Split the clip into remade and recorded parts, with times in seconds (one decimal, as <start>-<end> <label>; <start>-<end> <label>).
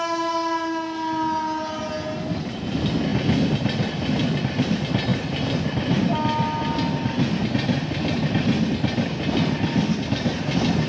0.0-10.9 recorded